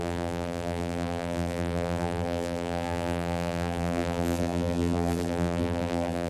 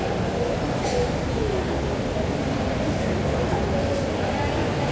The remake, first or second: first